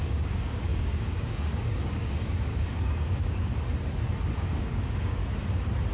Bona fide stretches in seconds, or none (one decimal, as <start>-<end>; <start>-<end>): 3.5-4.4; 5.2-5.9